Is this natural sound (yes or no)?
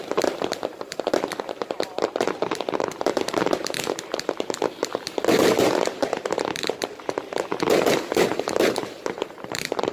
no